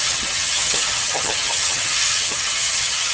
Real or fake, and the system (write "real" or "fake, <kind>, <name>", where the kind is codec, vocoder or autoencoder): fake, vocoder, HiFi-GAN